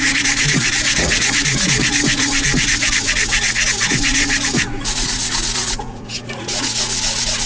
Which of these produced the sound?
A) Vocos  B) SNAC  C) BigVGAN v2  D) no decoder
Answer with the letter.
A